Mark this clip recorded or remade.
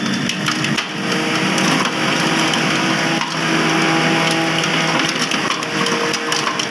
recorded